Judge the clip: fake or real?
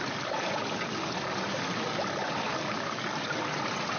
real